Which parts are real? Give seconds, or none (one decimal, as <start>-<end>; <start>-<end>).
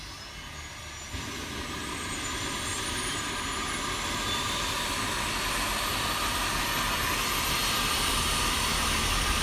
0.0-9.4